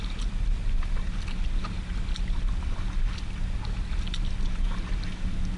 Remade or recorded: recorded